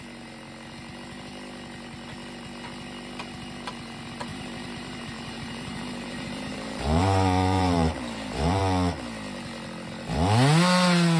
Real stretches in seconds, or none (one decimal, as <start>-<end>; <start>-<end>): 0.0-4.3; 8.6-11.2